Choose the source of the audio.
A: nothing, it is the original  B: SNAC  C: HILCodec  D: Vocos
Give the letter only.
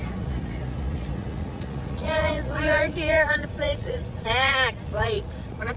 D